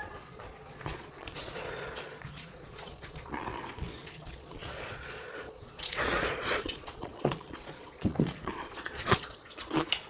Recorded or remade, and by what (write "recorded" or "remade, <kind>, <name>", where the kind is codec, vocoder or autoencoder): remade, vocoder, Vocos